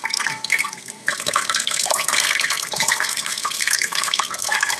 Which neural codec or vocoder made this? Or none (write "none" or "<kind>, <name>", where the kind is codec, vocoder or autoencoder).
codec, SNAC